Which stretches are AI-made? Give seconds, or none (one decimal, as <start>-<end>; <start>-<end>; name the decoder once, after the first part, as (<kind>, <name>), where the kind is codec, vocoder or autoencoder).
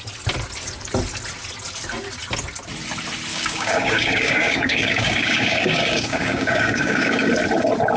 3.3-7.3 (codec, DAC)